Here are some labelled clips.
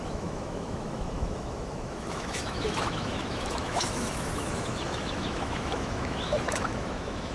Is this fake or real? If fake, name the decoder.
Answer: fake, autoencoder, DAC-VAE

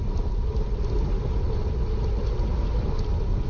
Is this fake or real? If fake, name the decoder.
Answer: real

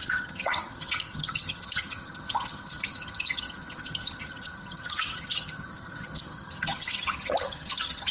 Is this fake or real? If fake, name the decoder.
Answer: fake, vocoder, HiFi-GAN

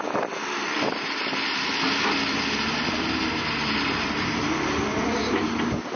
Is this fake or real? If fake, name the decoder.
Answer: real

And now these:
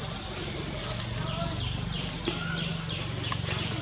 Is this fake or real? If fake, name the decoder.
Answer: fake, vocoder, BigVGAN v2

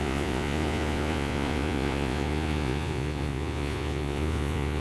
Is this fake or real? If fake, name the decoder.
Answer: fake, vocoder, Vocos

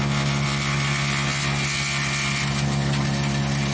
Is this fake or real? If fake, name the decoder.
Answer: real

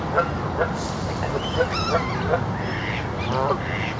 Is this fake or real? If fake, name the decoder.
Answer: real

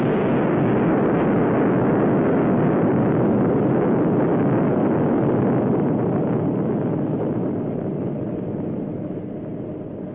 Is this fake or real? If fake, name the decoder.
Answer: real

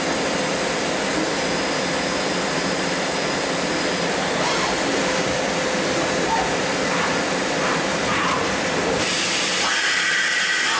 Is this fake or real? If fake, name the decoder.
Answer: fake, vocoder, BigVGAN v2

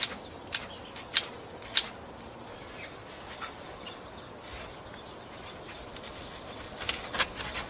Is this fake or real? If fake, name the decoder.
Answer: real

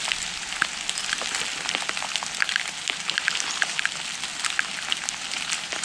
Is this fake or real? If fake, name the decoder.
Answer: real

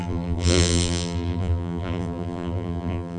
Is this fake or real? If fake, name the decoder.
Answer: fake, vocoder, BigVGAN v2